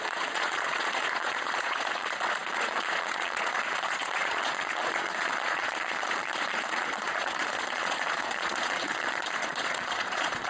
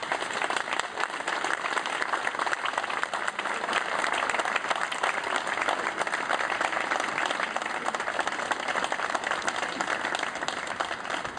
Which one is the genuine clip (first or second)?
second